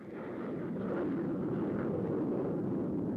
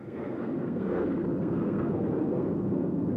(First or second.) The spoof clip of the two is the second